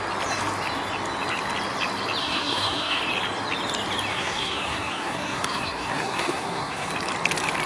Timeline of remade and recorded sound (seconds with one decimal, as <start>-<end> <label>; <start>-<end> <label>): 0.0-2.2 recorded; 2.2-3.0 remade; 3.0-4.1 recorded; 4.1-6.9 remade; 6.9-7.7 recorded